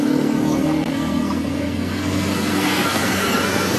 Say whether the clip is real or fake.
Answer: fake